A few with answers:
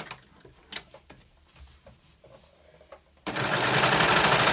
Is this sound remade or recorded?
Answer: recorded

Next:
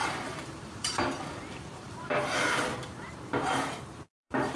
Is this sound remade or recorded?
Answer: remade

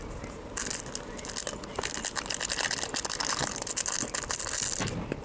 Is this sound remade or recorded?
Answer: recorded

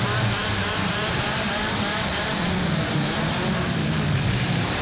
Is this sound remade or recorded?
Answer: remade